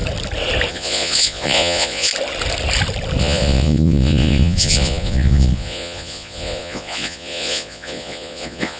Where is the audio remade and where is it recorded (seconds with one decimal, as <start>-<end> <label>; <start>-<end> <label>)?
0.0-0.7 recorded; 0.7-2.1 remade; 2.1-3.2 recorded; 3.2-8.8 remade